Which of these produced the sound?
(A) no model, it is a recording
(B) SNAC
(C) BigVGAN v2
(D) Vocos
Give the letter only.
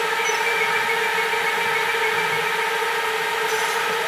A